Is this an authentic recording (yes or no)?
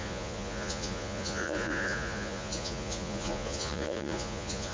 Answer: no